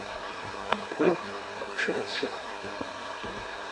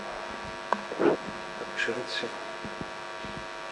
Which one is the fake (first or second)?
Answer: first